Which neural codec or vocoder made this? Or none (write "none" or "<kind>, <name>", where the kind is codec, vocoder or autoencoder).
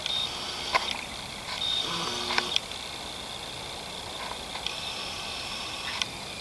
none